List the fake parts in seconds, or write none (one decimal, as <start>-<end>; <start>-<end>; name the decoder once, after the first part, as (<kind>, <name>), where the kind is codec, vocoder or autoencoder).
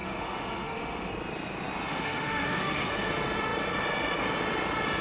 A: 0.0-1.1 (autoencoder, DAC-VAE); 1.9-2.9